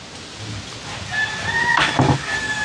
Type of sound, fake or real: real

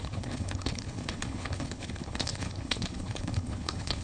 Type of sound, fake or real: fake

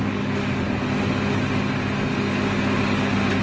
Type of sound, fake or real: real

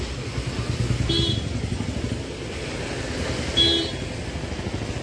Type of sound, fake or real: real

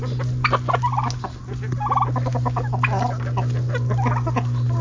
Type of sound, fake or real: real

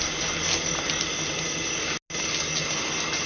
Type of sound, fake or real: real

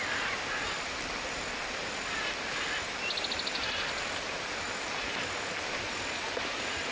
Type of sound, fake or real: real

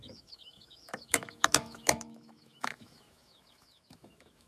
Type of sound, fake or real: fake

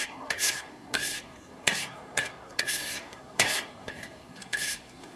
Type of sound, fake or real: fake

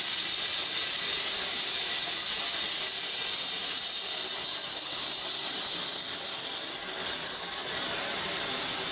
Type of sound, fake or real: real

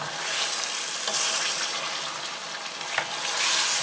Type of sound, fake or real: real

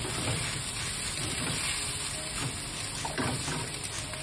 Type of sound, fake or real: real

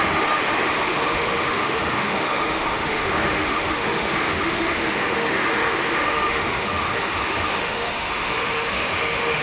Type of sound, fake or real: fake